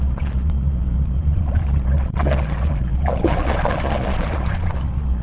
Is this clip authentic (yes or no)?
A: no